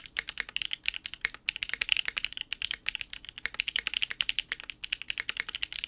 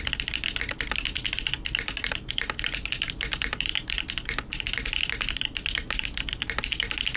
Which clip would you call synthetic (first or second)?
second